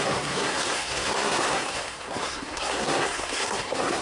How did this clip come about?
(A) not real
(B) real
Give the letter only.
A